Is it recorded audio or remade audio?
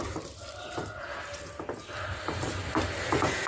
recorded